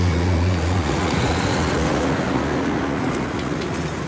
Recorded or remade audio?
remade